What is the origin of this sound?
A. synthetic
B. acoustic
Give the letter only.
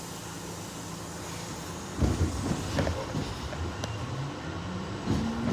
B